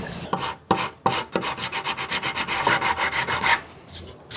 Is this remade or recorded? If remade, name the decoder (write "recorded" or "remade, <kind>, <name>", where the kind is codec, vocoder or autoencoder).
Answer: recorded